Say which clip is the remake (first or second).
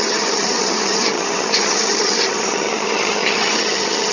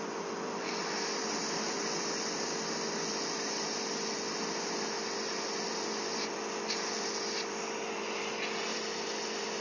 first